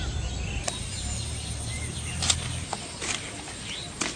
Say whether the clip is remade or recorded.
recorded